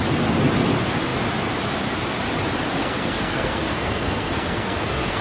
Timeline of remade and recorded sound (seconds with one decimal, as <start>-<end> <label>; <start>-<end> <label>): 0.0-2.8 recorded; 2.8-5.2 remade